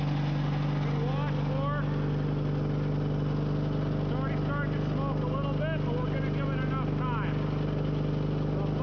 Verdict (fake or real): real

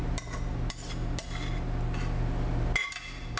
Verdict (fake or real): real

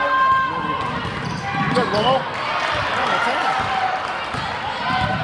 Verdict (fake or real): real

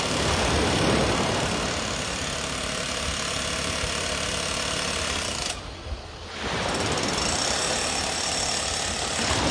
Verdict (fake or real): real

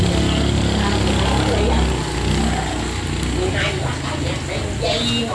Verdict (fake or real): real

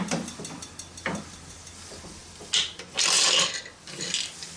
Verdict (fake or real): real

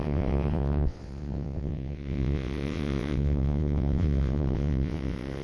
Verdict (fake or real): fake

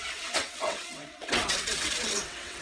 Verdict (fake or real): fake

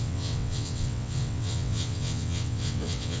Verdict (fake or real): fake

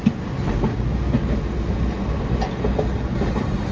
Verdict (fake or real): real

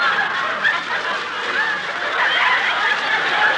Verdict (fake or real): real